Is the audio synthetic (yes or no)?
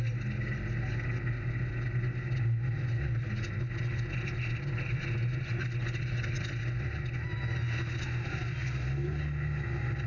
no